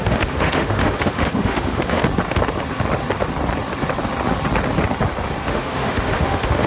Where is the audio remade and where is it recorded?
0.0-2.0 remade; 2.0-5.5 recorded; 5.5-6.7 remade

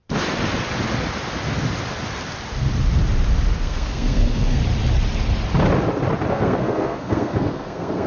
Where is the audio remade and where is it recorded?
0.0-3.6 recorded; 3.6-4.6 remade; 4.6-6.3 recorded; 6.3-8.1 remade

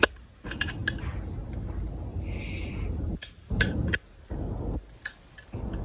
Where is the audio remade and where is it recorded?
0.0-2.1 recorded; 2.1-3.7 remade; 3.7-5.8 recorded

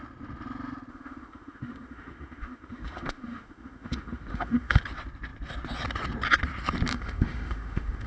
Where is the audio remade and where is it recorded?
0.0-0.9 recorded; 0.9-4.8 remade; 4.8-6.9 recorded; 6.9-8.1 remade